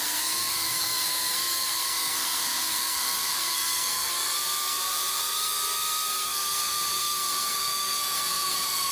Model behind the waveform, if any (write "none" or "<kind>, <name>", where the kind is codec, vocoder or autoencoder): codec, SNAC